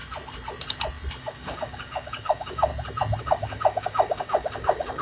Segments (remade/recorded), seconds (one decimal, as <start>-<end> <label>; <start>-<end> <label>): 0.0-1.2 recorded; 1.2-2.7 remade; 2.7-3.2 recorded; 3.2-5.0 remade

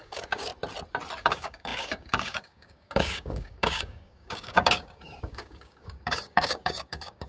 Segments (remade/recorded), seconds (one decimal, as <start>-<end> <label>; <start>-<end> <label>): 0.0-0.5 remade; 0.5-1.2 recorded; 1.2-7.3 remade

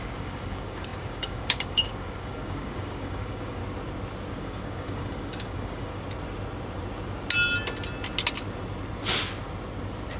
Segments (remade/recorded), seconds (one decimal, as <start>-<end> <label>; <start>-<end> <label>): 0.0-3.6 remade; 3.6-4.3 recorded; 4.3-5.9 remade; 5.9-10.2 recorded